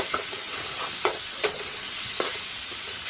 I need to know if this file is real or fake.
fake